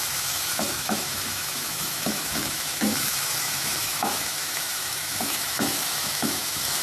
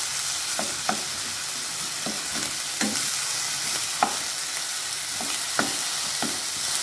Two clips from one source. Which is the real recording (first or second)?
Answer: second